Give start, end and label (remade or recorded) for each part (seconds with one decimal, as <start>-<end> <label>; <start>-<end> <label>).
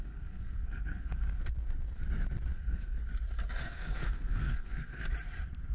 0.0-1.4 remade; 1.4-2.5 recorded; 2.5-3.0 remade; 3.0-3.6 recorded; 3.6-5.1 remade; 5.1-5.7 recorded